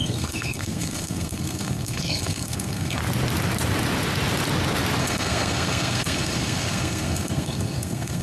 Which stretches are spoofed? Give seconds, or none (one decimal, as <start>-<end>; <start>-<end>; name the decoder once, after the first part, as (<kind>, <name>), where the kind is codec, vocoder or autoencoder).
0.0-3.0 (codec, SNAC); 5.0-8.2